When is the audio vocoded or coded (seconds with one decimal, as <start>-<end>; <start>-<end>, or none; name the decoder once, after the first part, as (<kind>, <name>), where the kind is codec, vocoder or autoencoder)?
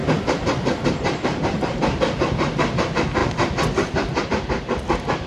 0.0-2.8 (vocoder, BigVGAN v2)